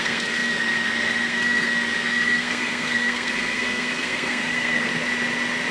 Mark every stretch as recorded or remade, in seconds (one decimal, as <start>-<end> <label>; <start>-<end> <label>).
0.0-4.9 remade; 4.9-5.7 recorded